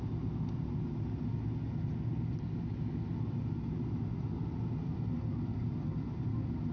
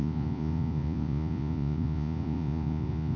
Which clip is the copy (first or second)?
second